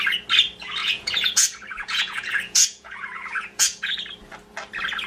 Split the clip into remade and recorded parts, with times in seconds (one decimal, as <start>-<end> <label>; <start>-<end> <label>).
0.0-0.8 recorded; 0.8-3.9 remade; 3.9-5.1 recorded